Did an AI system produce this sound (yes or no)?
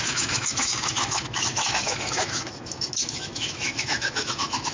yes